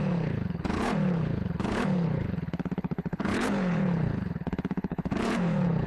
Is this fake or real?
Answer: fake